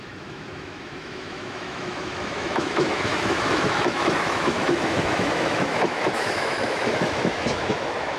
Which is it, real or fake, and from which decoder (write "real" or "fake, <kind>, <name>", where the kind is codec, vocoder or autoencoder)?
fake, autoencoder, DAC-VAE